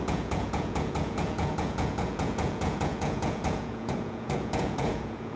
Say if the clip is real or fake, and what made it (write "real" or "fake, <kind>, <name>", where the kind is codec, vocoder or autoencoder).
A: fake, vocoder, Vocos